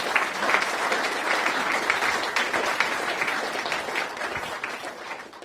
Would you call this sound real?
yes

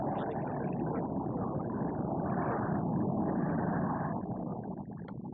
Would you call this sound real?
yes